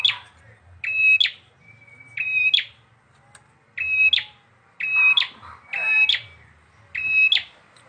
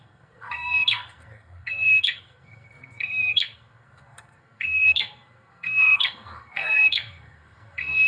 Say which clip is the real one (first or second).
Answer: first